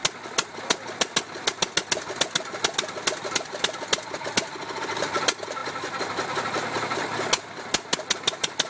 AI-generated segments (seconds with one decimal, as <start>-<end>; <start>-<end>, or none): none